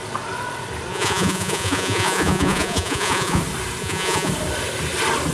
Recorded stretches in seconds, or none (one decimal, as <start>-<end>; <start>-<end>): 0.0-0.9; 3.4-3.8; 4.3-5.3